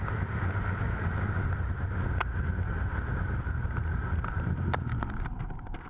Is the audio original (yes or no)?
yes